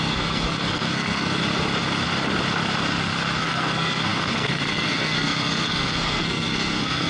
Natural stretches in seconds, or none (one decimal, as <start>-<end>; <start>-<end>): 1.4-3.4